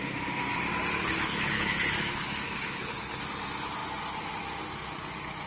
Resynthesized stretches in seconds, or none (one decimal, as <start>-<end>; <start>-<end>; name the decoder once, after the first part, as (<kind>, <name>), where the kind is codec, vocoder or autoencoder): 1.0-3.2 (codec, HILCodec)